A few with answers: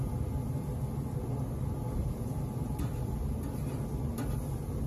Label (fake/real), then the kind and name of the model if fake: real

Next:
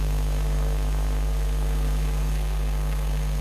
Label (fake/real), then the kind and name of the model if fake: fake, codec, SNAC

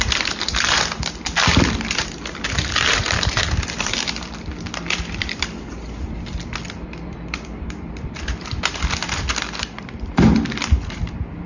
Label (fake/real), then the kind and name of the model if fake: fake, vocoder, BigVGAN v2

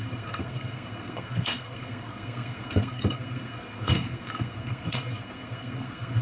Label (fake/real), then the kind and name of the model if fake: fake, codec, SNAC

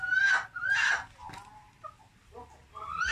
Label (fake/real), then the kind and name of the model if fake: real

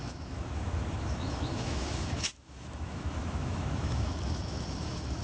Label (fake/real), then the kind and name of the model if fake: fake, autoencoder, DAC-VAE